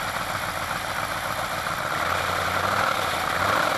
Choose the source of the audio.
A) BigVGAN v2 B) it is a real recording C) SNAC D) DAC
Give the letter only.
B